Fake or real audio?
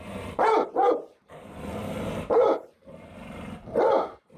fake